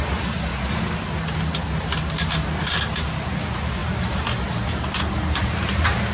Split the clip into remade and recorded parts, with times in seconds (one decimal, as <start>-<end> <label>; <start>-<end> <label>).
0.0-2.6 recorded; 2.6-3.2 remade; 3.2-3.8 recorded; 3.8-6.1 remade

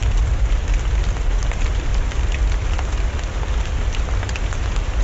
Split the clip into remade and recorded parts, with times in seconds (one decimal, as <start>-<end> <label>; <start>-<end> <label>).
0.0-1.1 recorded; 1.1-1.9 remade; 1.9-5.0 recorded

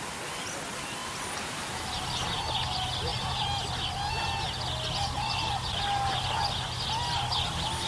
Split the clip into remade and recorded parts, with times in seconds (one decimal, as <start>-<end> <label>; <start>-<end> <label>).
0.0-1.0 recorded; 1.0-2.4 remade; 2.4-7.9 recorded